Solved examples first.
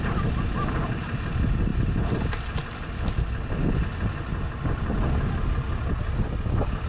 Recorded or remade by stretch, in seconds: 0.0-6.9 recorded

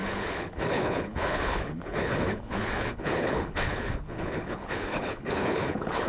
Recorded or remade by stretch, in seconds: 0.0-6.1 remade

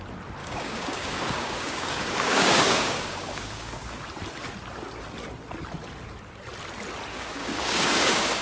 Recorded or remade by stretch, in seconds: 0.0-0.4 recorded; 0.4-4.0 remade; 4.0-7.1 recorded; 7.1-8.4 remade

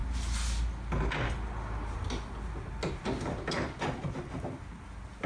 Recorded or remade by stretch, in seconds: 0.0-5.3 recorded

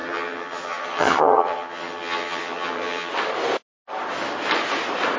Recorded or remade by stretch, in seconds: 0.0-3.1 remade; 3.1-5.2 recorded